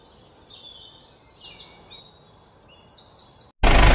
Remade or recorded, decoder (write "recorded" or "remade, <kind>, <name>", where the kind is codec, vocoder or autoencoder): recorded